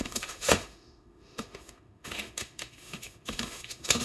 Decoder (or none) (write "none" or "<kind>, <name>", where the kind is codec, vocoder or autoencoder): autoencoder, DAC-VAE